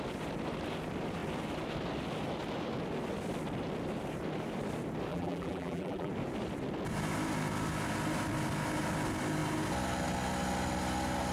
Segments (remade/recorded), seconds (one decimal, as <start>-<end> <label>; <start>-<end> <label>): 0.0-5.1 recorded; 5.1-6.1 remade; 6.1-11.3 recorded